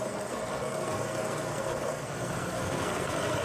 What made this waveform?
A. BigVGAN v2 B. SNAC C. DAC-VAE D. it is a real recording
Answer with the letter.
B